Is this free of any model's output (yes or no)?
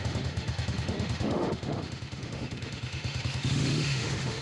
no